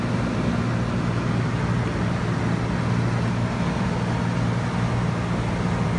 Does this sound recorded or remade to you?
recorded